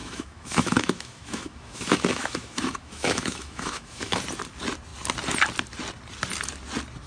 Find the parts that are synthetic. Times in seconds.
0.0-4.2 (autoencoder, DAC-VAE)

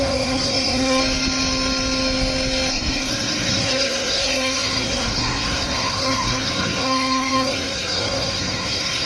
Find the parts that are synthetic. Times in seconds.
0.0-1.0 (codec, SNAC); 2.7-9.1

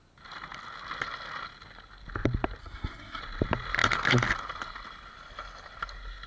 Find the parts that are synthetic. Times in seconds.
2.6-3.2 (codec, SNAC)

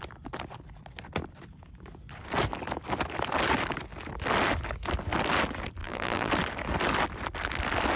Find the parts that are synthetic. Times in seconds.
5.8-6.3 (vocoder, BigVGAN v2)

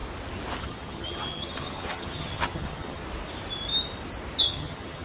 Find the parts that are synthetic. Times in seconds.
0.6-3.0 (vocoder, HiFi-GAN); 4.4-5.0